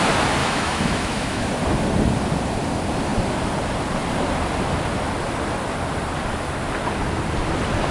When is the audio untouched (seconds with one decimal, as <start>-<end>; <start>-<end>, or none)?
0.0-0.4; 1.5-7.9